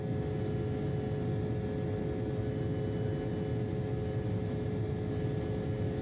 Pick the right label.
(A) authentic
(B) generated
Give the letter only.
A